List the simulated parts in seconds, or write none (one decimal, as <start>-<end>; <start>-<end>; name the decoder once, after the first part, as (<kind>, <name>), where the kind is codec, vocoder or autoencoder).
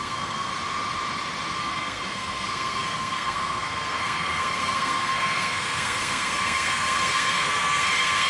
0.0-0.5 (codec, SNAC); 1.6-8.3